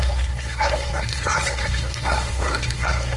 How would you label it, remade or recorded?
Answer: remade